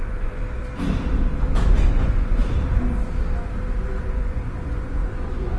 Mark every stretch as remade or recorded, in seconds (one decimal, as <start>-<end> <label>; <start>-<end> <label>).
0.0-0.4 remade; 0.4-1.9 recorded; 1.9-2.4 remade; 2.4-4.0 recorded; 4.0-5.6 remade